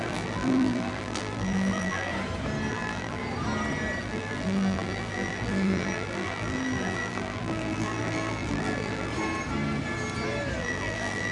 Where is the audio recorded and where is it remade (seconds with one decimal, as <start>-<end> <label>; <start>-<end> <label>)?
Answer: 0.0-2.1 remade; 2.1-2.7 recorded; 2.7-3.2 remade; 3.2-4.0 recorded; 4.0-9.1 remade; 9.1-10.6 recorded; 10.6-11.3 remade